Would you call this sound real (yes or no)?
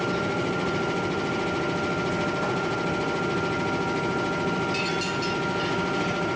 yes